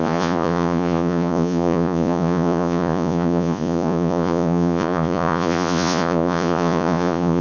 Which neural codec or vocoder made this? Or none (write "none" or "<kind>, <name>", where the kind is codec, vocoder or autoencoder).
vocoder, Vocos